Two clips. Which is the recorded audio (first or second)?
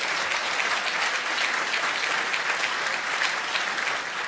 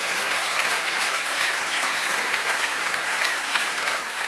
first